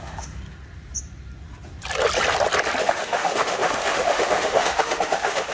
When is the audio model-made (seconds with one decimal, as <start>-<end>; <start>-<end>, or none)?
0.0-0.4; 2.8-5.5